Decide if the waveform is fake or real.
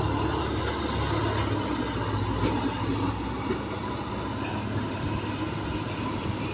real